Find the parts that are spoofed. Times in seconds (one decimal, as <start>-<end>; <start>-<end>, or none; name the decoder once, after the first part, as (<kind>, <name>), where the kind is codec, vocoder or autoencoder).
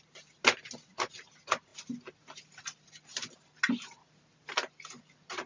none